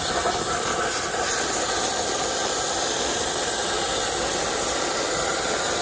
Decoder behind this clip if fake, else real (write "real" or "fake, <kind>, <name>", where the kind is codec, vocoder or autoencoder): real